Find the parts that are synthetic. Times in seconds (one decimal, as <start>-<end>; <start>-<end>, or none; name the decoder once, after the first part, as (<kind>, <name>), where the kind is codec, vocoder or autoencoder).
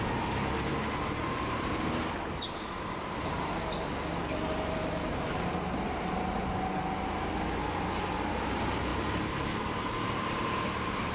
none